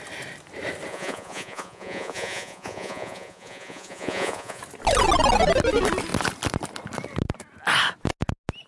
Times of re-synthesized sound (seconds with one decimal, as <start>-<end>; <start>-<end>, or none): 0.9-4.6